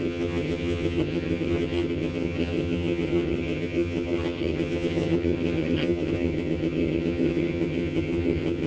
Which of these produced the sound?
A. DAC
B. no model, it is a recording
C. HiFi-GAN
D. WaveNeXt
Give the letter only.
C